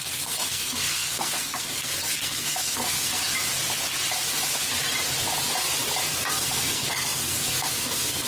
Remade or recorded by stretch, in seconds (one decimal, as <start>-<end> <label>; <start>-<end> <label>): 0.0-3.2 remade; 3.2-6.3 recorded; 6.3-8.3 remade